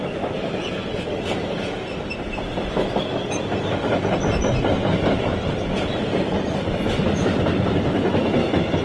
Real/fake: real